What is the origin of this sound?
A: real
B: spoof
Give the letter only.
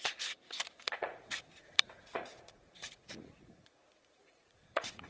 B